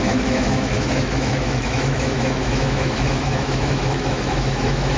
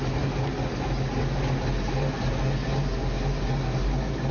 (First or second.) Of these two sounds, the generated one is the first